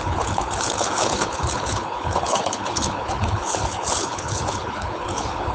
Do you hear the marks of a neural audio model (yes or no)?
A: yes